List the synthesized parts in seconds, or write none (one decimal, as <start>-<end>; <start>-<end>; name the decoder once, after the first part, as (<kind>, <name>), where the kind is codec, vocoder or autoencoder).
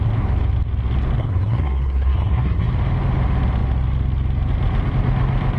1.2-2.7 (codec, SNAC)